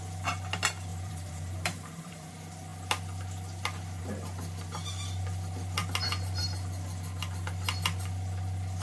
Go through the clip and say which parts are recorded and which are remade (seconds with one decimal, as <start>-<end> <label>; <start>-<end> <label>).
0.0-0.9 recorded; 0.9-2.3 remade; 2.3-8.8 recorded